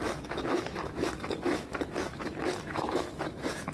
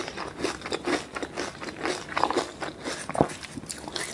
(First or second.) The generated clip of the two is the first